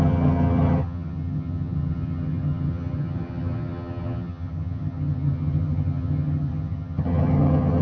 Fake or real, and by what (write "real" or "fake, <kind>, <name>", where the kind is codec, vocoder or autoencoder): fake, vocoder, HiFi-GAN